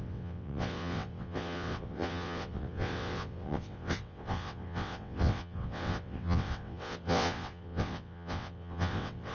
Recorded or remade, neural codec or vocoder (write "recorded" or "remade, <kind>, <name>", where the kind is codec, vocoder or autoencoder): remade, vocoder, WaveNeXt